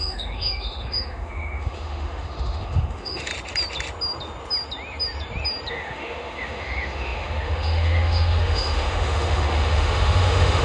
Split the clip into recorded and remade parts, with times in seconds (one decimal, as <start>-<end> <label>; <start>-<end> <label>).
0.0-3.3 remade; 3.3-5.7 recorded; 5.7-10.6 remade